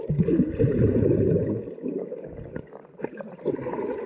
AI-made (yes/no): no